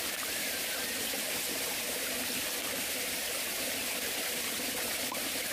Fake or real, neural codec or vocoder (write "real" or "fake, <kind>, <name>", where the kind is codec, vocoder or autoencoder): real